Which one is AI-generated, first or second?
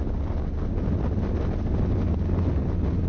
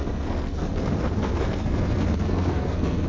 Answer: second